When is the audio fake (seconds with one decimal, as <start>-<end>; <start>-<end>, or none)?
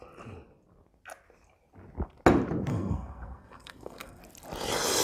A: 2.7-4.2